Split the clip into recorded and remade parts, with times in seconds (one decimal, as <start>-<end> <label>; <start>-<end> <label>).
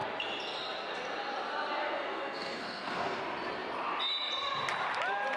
0.0-1.8 recorded; 1.8-3.2 remade; 3.2-5.4 recorded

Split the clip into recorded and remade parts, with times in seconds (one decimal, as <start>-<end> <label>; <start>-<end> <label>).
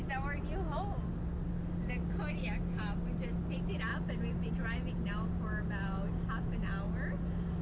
0.0-7.6 recorded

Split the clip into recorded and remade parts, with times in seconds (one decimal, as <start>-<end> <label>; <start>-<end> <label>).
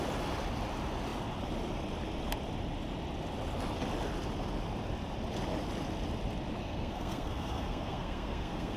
0.0-6.6 recorded; 6.6-8.8 remade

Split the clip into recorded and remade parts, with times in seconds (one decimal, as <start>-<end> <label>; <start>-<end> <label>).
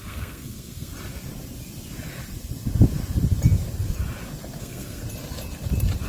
0.0-0.9 remade; 0.9-4.6 recorded; 4.6-5.0 remade; 5.0-6.1 recorded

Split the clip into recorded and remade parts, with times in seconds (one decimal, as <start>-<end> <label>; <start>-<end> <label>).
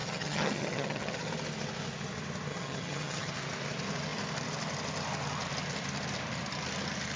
0.0-1.3 remade; 1.3-2.5 recorded; 2.5-3.4 remade; 3.4-7.2 recorded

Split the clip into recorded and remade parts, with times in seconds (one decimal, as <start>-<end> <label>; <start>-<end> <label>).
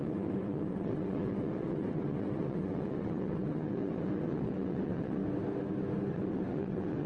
0.0-5.2 remade; 5.2-6.1 recorded; 6.1-7.1 remade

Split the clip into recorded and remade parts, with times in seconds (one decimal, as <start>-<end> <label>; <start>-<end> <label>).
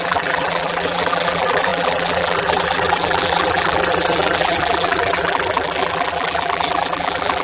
0.0-7.4 remade